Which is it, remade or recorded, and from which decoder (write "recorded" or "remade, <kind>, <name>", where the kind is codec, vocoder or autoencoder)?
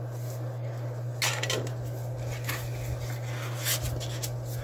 recorded